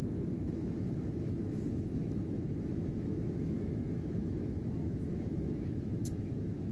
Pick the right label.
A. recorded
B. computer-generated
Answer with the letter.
B